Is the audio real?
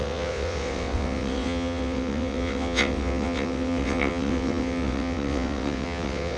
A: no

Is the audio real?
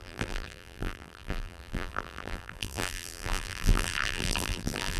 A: no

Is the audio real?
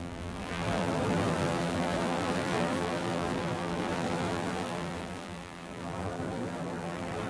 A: no